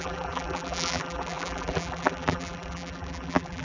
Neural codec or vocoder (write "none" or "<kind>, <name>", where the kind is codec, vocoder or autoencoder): vocoder, BigVGAN v2